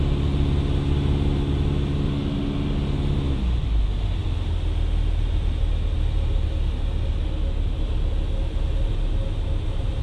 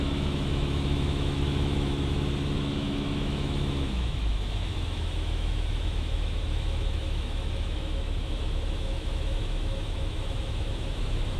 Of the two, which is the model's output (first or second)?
second